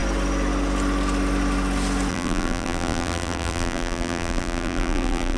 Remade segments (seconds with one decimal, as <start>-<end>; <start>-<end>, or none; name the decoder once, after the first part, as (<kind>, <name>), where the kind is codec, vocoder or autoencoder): 2.1-5.4 (vocoder, BigVGAN v2)